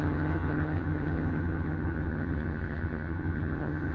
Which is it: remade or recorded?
remade